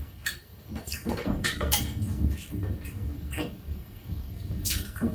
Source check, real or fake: fake